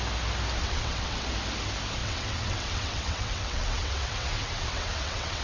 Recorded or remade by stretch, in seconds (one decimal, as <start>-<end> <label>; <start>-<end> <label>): 0.0-0.6 recorded; 0.6-1.3 remade; 1.3-2.0 recorded; 2.0-5.4 remade